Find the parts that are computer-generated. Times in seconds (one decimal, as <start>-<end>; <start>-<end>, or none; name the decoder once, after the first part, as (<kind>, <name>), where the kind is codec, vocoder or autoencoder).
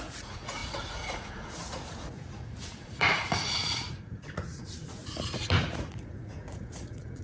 0.0-7.2 (vocoder, Vocos)